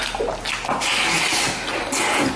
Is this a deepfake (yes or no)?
no